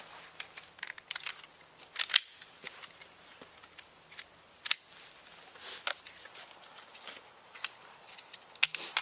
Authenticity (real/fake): real